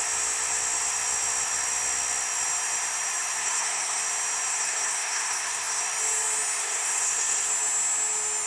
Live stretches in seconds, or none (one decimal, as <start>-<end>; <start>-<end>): 0.0-3.4; 4.0-4.5; 5.8-6.6; 7.5-8.5

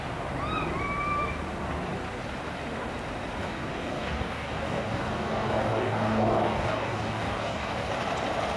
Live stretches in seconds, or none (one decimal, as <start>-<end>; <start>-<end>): 0.0-3.4; 7.9-8.6

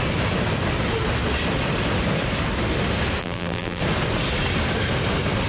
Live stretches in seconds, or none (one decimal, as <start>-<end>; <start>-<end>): 0.0-3.2; 3.8-5.5

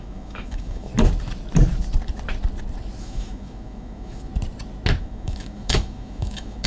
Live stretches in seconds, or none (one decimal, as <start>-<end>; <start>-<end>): 0.9-3.0; 4.3-5.0

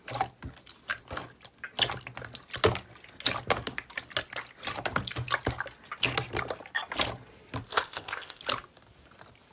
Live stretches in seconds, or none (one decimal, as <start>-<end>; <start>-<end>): 0.0-7.7; 8.4-9.5

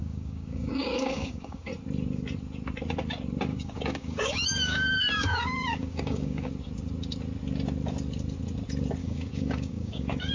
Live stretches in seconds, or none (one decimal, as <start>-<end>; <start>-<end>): 1.7-3.5; 6.5-9.0